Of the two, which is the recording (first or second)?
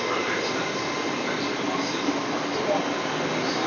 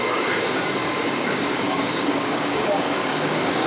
first